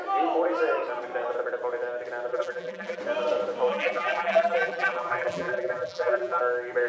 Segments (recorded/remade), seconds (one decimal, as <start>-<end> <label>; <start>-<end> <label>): 0.0-2.3 recorded; 2.3-3.0 remade; 3.0-3.7 recorded; 3.7-6.4 remade; 6.4-6.9 recorded